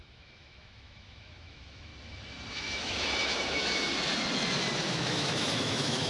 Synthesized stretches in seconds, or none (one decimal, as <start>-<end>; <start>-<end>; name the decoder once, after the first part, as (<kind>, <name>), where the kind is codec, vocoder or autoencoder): 0.0-1.9 (autoencoder, DAC-VAE); 2.5-3.9; 4.9-6.1